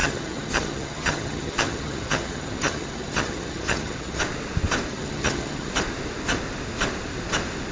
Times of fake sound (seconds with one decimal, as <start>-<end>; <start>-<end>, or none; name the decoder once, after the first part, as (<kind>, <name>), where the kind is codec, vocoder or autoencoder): 0.0-4.2 (vocoder, HiFi-GAN); 4.9-5.7

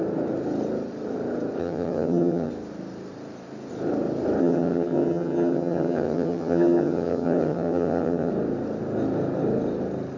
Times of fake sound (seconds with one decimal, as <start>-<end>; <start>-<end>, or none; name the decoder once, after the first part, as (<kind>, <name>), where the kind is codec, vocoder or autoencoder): 1.6-2.5 (vocoder, HiFi-GAN); 4.4-8.3